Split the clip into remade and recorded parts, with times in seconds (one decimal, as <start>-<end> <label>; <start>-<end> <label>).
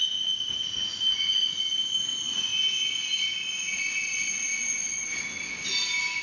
0.0-6.2 recorded